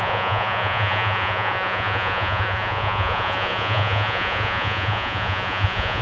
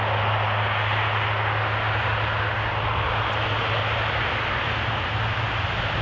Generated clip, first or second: first